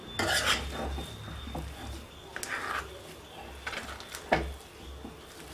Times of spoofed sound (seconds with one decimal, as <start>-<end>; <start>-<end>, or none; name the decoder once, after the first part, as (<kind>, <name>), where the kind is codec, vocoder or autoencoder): none